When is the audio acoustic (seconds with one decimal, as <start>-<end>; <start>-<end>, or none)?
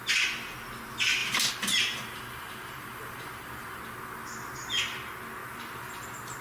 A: 0.0-1.2; 3.5-5.4